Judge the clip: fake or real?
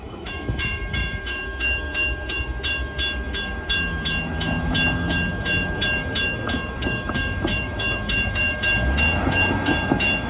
fake